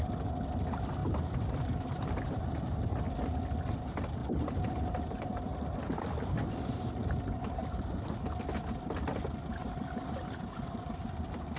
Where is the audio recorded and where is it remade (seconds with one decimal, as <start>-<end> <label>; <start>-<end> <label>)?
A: 0.0-1.0 recorded; 1.0-2.9 remade; 2.9-4.2 recorded; 4.2-5.8 remade; 5.8-11.6 recorded